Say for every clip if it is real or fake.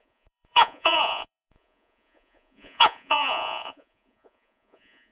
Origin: fake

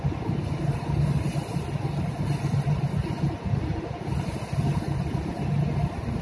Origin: real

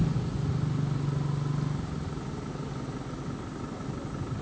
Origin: real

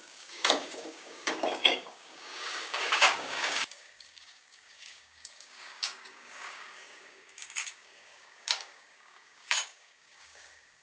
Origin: fake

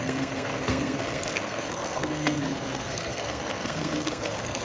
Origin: fake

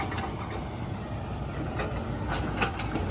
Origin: real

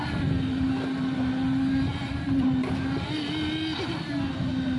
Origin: real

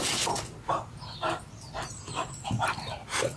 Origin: real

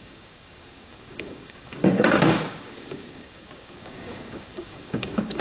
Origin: fake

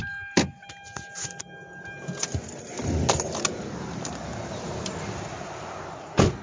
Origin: real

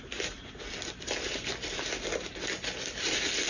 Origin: real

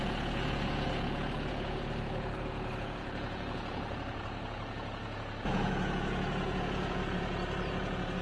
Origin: fake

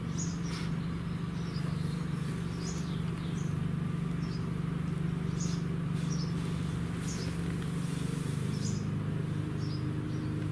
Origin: real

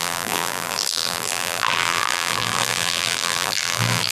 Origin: fake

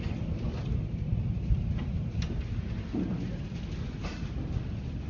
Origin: real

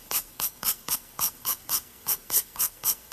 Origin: fake